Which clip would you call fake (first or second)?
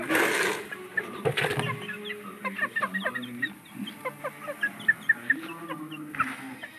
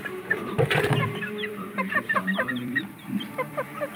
second